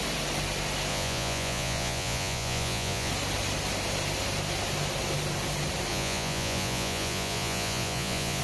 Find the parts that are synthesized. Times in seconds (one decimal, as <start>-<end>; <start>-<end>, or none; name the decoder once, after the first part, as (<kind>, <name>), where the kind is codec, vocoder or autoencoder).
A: 0.9-3.1 (vocoder, Vocos); 5.9-8.4